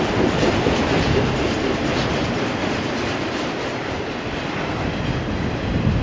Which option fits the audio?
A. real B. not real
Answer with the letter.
A